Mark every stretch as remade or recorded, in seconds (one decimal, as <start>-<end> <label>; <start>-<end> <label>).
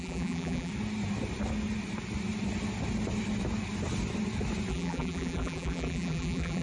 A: 0.0-0.7 remade; 0.7-4.7 recorded; 4.7-6.6 remade